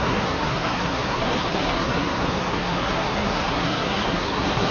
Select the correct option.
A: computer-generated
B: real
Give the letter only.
A